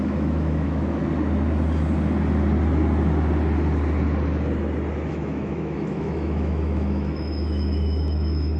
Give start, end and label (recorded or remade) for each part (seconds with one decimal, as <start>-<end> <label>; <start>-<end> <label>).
0.0-1.0 remade; 1.0-5.1 recorded; 5.1-8.6 remade